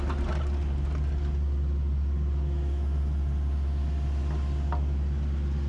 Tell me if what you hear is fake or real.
real